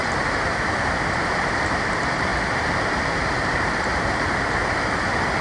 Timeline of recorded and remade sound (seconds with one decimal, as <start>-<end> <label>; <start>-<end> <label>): 0.0-2.3 remade; 2.3-2.9 recorded; 2.9-4.6 remade; 4.6-5.4 recorded